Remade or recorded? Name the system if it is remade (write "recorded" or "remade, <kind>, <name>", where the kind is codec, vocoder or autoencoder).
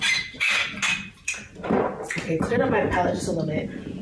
recorded